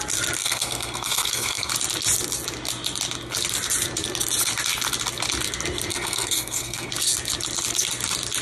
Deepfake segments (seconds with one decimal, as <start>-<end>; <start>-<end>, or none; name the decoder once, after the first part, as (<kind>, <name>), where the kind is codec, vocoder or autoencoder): 0.4-1.7 (codec, SNAC); 5.9-6.9